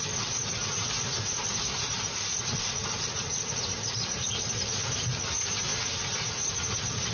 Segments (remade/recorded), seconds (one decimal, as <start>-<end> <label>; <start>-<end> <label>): 0.0-7.1 recorded